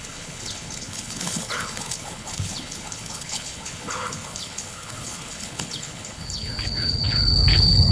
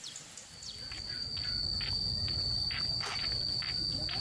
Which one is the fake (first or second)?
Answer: first